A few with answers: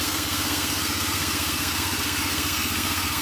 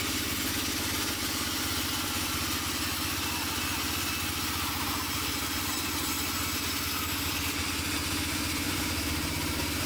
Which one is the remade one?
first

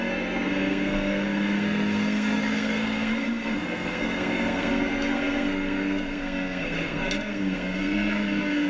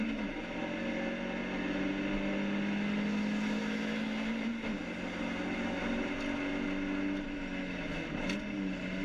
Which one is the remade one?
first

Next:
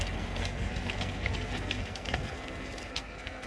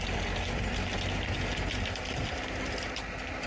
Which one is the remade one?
first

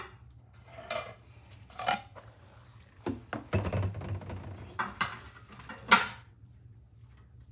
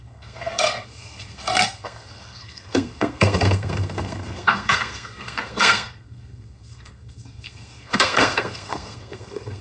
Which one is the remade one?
second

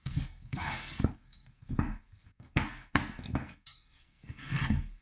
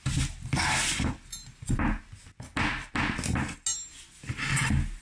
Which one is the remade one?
first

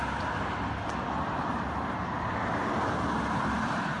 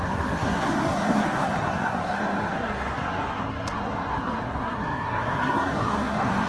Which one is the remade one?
second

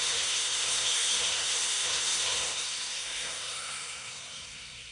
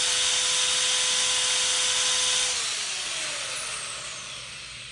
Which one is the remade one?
first